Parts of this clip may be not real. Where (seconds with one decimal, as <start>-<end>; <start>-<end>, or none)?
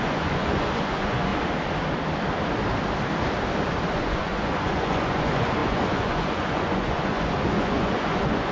0.0-1.3; 3.9-8.5